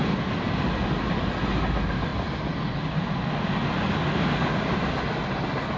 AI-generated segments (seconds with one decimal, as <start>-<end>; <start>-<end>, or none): none

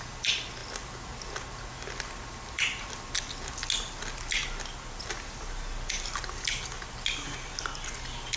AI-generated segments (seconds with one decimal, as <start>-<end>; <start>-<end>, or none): none